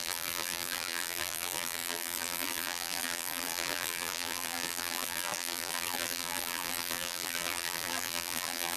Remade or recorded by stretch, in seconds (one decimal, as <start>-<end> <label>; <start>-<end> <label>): 0.0-8.8 remade

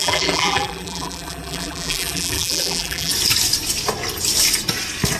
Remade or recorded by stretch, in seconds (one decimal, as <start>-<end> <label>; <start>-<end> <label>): 0.0-3.1 remade; 3.1-5.2 recorded

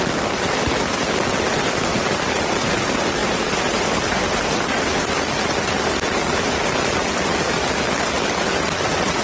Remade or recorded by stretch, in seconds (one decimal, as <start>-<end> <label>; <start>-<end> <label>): 0.0-1.9 recorded; 1.9-2.4 remade; 2.4-3.2 recorded; 3.2-5.2 remade; 5.2-9.2 recorded

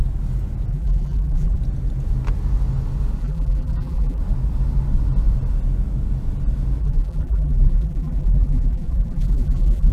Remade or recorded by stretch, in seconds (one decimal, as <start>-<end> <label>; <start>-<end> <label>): 0.0-0.7 recorded; 0.7-1.6 remade; 1.6-3.2 recorded; 3.2-4.2 remade; 4.2-6.8 recorded; 6.8-9.9 remade

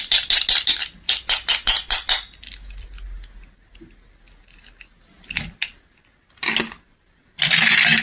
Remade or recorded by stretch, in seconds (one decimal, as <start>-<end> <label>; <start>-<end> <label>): 0.0-8.0 recorded

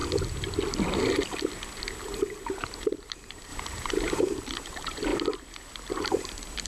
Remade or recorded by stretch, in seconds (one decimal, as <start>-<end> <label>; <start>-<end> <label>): 0.0-2.5 recorded; 2.5-5.1 remade; 5.1-5.9 recorded; 5.9-6.7 remade

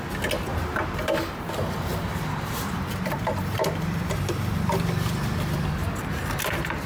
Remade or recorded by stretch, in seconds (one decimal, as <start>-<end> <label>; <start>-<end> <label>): 0.0-0.5 recorded; 0.5-4.6 remade; 4.6-6.9 recorded

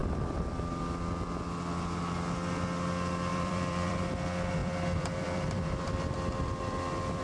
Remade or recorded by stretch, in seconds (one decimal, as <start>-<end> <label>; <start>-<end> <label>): 0.0-0.8 remade; 0.8-3.3 recorded; 3.3-4.0 remade; 4.0-4.6 recorded; 4.6-7.2 remade